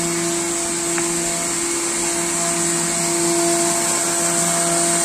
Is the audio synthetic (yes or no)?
no